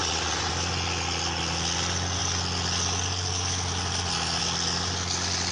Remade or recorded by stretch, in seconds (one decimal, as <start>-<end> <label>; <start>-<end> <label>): 0.0-0.5 remade; 0.5-5.5 recorded

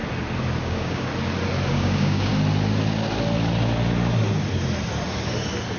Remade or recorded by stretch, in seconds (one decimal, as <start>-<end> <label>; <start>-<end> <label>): 0.0-0.6 recorded; 0.6-1.1 remade; 1.1-1.7 recorded; 1.7-2.3 remade; 2.3-5.8 recorded